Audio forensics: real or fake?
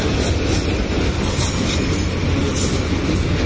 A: real